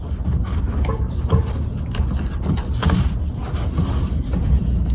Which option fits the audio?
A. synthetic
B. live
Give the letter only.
B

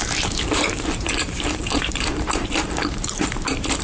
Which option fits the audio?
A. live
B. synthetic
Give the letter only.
B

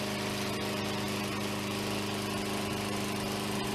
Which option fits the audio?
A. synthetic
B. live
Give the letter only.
B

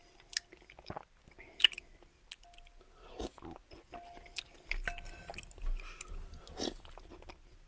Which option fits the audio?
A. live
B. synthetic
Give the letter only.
A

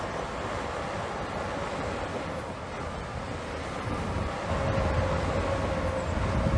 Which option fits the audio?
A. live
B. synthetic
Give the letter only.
A